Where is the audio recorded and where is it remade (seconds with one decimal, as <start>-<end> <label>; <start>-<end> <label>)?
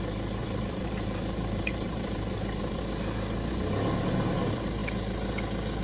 0.0-0.4 recorded; 0.4-2.8 remade; 2.8-5.8 recorded